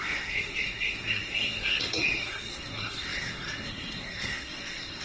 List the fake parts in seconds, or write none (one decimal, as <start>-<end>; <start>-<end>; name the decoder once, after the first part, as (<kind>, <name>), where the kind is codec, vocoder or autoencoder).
0.0-5.0 (codec, SNAC)